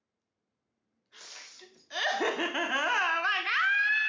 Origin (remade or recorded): recorded